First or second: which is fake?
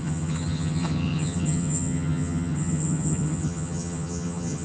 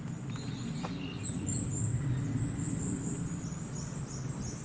first